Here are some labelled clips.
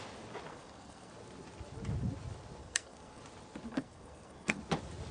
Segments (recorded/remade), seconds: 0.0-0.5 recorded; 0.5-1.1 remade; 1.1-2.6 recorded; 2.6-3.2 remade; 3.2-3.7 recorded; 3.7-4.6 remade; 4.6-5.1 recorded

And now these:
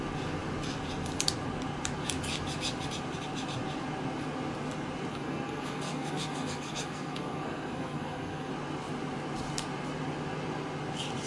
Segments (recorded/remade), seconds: 0.0-5.1 recorded; 5.1-8.5 remade; 8.5-11.3 recorded